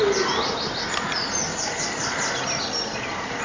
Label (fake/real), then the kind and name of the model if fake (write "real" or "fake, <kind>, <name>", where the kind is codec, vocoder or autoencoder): real